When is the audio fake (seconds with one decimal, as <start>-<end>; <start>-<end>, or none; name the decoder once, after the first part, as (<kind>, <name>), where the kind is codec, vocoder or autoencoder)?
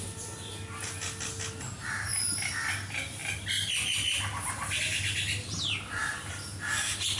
3.2-4.8 (vocoder, BigVGAN v2); 6.0-7.2